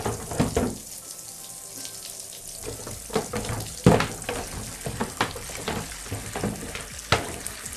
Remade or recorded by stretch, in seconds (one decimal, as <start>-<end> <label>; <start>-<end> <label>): 0.0-7.8 recorded